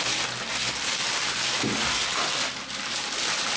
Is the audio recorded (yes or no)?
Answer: yes